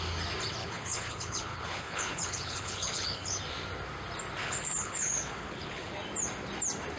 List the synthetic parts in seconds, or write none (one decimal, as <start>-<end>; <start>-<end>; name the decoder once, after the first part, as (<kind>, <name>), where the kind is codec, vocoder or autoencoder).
0.6-3.4 (codec, HILCodec); 4.4-5.9